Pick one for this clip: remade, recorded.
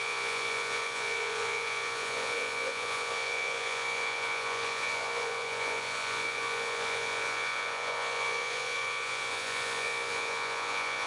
remade